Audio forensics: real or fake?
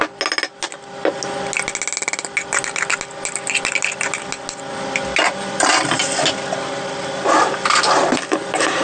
real